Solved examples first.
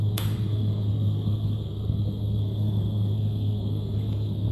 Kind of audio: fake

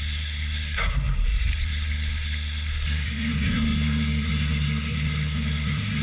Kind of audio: fake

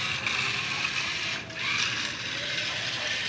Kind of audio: real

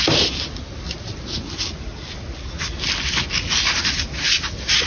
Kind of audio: real